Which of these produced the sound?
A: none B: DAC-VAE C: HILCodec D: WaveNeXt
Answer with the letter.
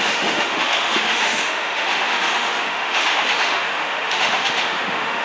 B